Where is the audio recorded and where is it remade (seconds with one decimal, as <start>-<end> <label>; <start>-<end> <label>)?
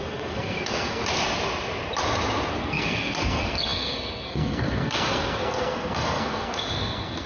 0.0-1.0 remade; 1.0-2.5 recorded; 2.5-7.3 remade